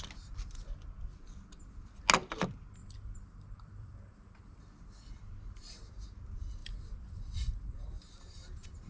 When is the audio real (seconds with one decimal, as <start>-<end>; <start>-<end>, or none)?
0.0-2.8; 4.6-6.6; 8.2-8.9